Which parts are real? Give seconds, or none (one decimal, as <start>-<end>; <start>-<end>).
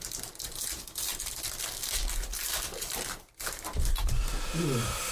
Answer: 0.0-1.1; 4.2-5.1